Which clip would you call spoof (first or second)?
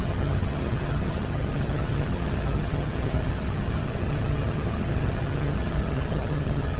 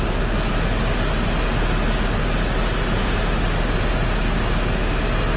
first